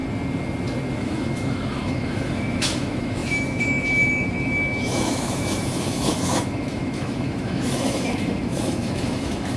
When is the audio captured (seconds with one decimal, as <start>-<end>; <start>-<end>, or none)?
0.0-0.9